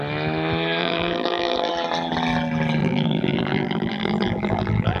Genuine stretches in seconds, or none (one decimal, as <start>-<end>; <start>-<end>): 0.0-0.8; 1.7-2.8